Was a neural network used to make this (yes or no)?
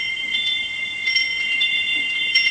yes